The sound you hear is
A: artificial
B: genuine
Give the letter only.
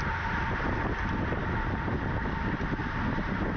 B